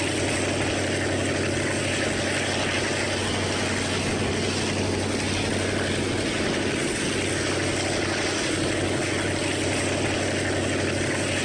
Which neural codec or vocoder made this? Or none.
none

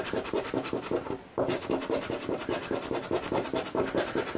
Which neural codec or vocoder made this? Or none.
none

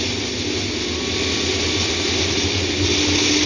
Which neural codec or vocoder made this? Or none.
none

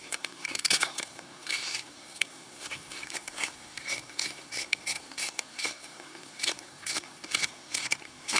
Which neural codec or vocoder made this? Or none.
codec, SNAC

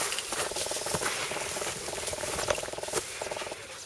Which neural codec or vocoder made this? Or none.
none